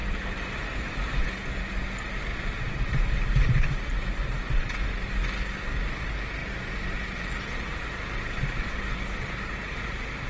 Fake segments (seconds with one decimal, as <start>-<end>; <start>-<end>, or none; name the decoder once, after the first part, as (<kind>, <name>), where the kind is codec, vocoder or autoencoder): 0.0-1.2 (vocoder, BigVGAN v2); 2.3-4.1; 6.4-10.3